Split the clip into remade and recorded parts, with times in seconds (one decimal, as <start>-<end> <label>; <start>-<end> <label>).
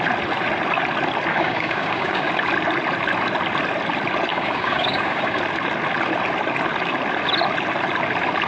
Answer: 0.0-1.3 recorded; 1.3-2.3 remade; 2.3-4.3 recorded; 4.3-5.4 remade; 5.4-8.5 recorded